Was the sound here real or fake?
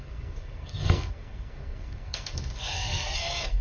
fake